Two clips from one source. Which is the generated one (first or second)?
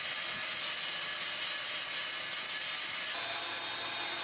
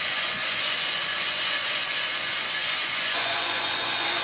second